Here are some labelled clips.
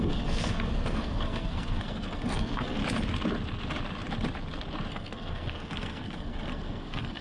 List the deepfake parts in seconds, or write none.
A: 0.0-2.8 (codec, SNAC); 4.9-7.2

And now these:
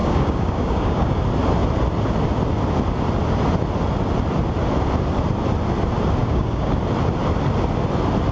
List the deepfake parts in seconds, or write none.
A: 0.0-1.2 (codec, DAC); 6.2-6.8

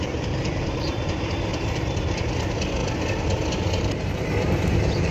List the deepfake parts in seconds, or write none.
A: 0.0-1.5 (vocoder, BigVGAN v2); 2.1-2.8; 3.8-5.1

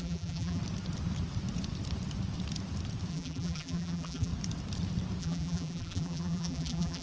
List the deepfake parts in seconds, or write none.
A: 0.0-0.6 (vocoder, BigVGAN v2); 3.1-4.3; 5.2-7.0

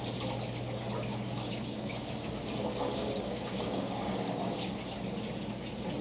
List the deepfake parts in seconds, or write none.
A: 1.1-4.7 (codec, DAC)

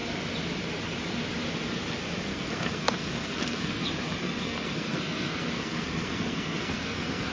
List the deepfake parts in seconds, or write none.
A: 2.3-3.8 (codec, SNAC); 4.2-7.3

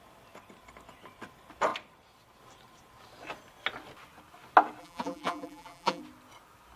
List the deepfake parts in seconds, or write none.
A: 4.8-6.0 (vocoder, BigVGAN v2)